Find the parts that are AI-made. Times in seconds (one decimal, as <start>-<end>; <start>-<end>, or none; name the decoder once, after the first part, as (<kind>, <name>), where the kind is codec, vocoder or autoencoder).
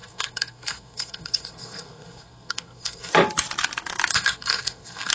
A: 0.0-3.1 (codec, SNAC); 4.1-5.1